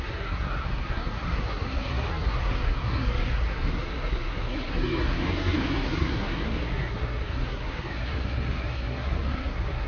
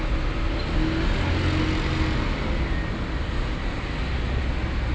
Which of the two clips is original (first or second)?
second